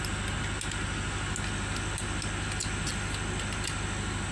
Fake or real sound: real